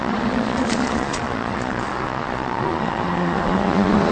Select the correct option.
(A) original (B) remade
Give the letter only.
B